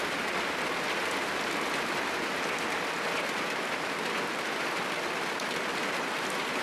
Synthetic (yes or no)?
no